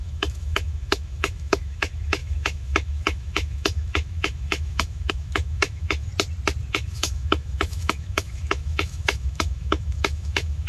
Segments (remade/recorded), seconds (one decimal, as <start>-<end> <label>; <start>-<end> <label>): 0.0-6.1 remade; 6.1-6.7 recorded; 6.7-10.7 remade